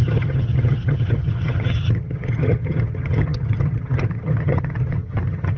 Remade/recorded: remade